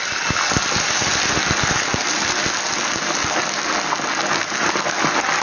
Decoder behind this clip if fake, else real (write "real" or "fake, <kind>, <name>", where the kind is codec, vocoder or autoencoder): real